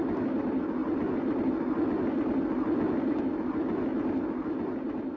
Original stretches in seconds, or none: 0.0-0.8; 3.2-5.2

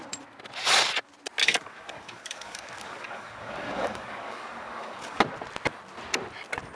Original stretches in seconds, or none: 0.0-1.4; 5.2-6.8